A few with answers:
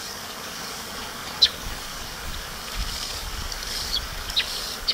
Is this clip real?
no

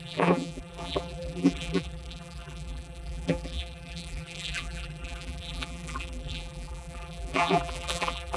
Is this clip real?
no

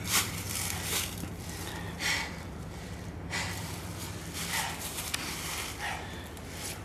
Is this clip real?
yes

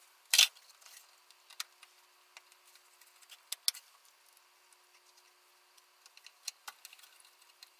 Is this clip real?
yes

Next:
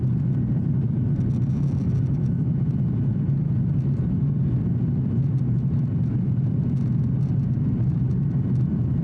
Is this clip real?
yes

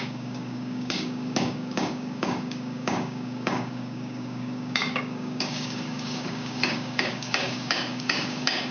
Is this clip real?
no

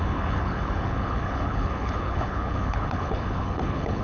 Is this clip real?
no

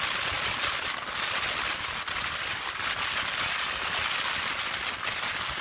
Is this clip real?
yes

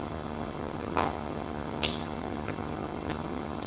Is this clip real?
no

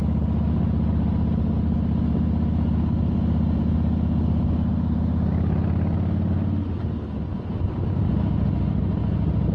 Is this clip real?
yes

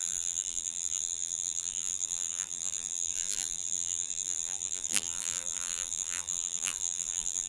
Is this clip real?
no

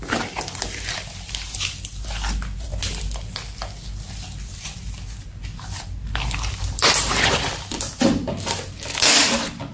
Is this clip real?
yes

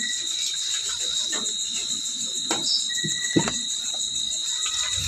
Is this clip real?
yes